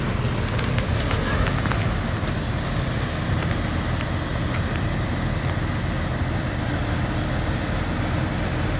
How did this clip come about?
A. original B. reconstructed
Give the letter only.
A